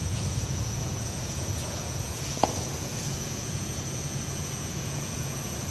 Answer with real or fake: fake